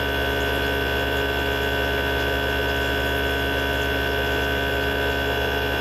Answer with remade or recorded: recorded